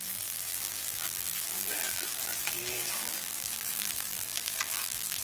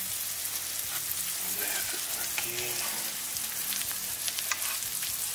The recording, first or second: second